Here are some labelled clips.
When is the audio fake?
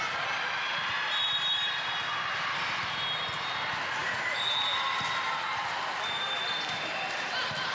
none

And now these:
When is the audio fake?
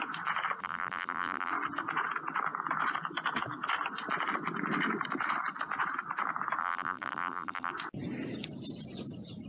0.6-1.5; 6.6-7.7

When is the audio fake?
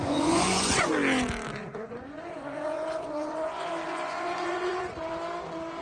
0.0-0.9; 1.6-5.1